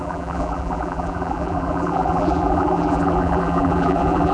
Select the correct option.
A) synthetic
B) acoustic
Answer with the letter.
A